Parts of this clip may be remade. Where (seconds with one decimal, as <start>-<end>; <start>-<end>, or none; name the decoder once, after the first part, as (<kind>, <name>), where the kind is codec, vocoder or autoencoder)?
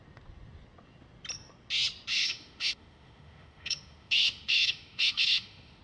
2.1-5.8 (autoencoder, DAC-VAE)